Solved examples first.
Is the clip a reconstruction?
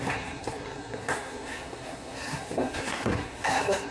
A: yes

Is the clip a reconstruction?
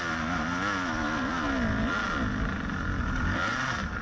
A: no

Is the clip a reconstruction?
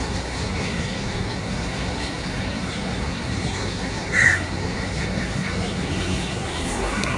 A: yes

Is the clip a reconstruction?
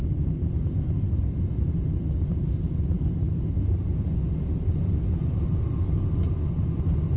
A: no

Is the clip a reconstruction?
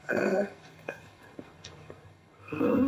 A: yes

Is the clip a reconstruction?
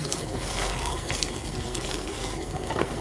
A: yes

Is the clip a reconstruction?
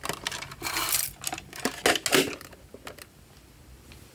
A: no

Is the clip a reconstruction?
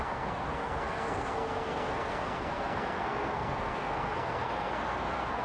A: yes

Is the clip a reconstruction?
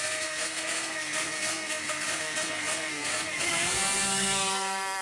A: yes